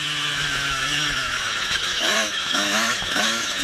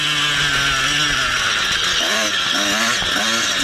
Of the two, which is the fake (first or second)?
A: first